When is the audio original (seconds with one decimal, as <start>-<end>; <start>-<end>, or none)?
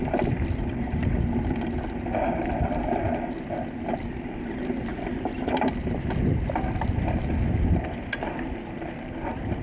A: 0.0-9.6